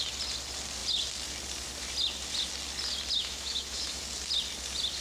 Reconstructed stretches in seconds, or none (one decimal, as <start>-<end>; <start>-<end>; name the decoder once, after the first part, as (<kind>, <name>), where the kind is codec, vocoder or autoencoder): 3.2-4.0 (autoencoder, DAC-VAE)